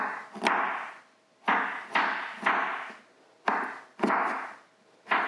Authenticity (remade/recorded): recorded